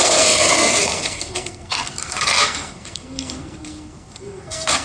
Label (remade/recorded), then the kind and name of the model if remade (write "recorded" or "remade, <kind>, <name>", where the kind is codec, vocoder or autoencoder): remade, codec, SNAC